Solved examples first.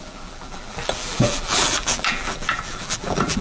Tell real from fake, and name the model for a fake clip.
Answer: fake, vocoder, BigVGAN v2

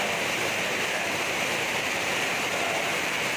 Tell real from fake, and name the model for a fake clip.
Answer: fake, vocoder, BigVGAN v2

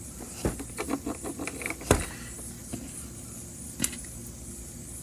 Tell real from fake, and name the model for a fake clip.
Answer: real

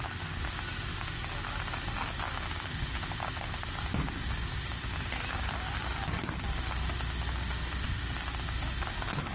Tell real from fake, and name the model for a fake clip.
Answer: real